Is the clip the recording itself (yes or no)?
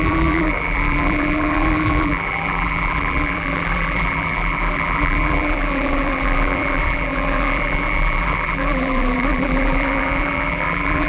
no